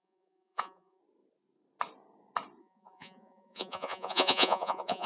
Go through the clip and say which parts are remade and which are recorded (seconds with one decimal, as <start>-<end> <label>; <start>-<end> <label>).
0.0-1.0 remade; 1.0-2.6 recorded; 2.6-5.1 remade